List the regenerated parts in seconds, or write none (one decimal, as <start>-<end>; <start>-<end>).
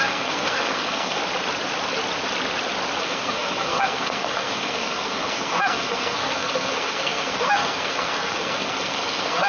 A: 0.0-1.2; 3.0-9.5